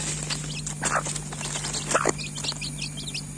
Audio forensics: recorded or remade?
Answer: recorded